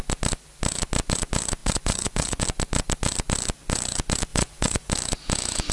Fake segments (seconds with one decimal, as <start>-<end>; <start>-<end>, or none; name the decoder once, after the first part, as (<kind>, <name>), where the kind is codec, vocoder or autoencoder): 1.6-2.4 (vocoder, Vocos); 4.3-4.9